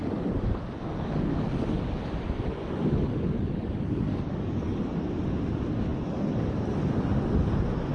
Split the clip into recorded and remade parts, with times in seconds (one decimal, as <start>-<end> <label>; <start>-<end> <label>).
0.0-2.0 remade; 2.0-2.5 recorded; 2.5-4.9 remade; 4.9-7.9 recorded